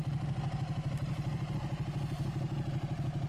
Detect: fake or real real